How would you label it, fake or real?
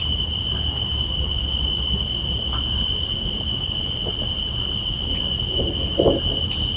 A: fake